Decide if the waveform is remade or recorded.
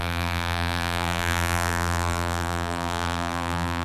remade